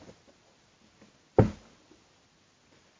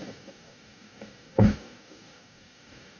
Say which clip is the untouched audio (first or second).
first